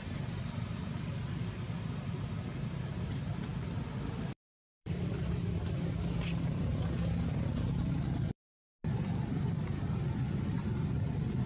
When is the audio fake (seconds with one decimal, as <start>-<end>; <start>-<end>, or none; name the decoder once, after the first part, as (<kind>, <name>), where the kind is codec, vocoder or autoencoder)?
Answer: 3.5-7.8 (vocoder, BigVGAN v2)